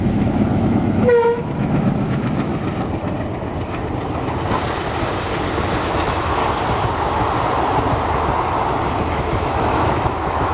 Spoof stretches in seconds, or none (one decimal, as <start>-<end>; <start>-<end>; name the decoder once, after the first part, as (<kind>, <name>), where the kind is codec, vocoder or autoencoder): 0.0-2.5 (autoencoder, DAC-VAE); 5.8-6.4; 9.1-10.5